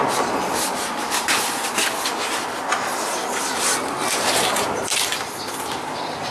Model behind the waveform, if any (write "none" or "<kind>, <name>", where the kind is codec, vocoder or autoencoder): vocoder, BigVGAN v2